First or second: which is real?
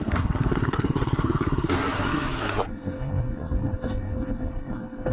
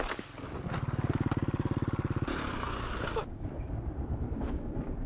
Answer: second